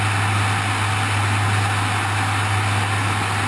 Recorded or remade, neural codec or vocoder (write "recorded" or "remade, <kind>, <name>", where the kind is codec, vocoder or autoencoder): recorded